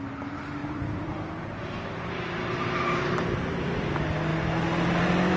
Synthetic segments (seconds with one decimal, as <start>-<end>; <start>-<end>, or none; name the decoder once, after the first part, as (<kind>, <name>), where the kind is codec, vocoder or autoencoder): 0.6-3.8 (vocoder, BigVGAN v2)